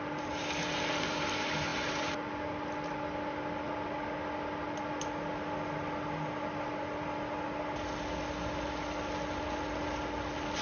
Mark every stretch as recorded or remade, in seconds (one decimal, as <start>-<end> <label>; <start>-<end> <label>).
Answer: 0.0-10.6 recorded